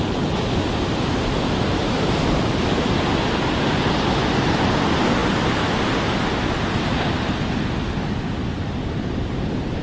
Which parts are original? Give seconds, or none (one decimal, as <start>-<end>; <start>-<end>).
0.0-9.8